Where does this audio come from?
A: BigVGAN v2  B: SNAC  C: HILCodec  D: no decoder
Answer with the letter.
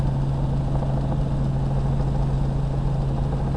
D